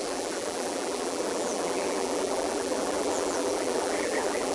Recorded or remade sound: remade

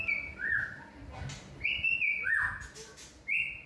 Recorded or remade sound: recorded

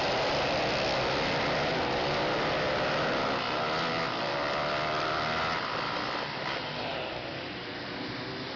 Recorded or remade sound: recorded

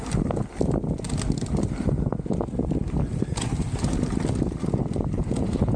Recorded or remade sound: recorded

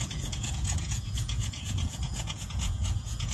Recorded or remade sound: remade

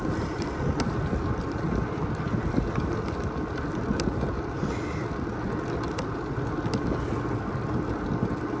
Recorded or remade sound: recorded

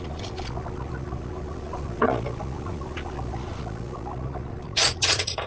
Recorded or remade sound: remade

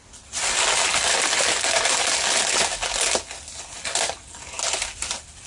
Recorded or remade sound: recorded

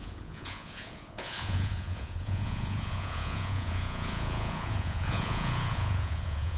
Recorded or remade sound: remade